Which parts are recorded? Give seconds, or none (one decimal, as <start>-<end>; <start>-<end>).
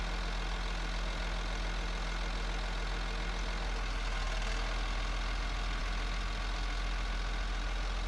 0.0-8.1